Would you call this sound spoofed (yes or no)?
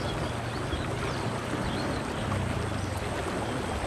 no